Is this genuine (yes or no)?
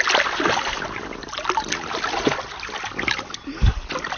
yes